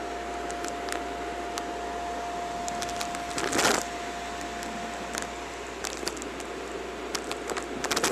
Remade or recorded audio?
recorded